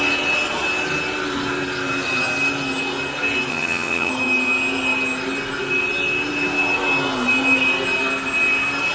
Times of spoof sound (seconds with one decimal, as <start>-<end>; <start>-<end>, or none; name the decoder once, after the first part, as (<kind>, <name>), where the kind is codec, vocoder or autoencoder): 3.5-4.1 (vocoder, HiFi-GAN)